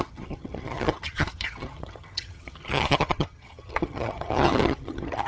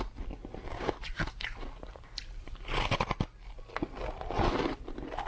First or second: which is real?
second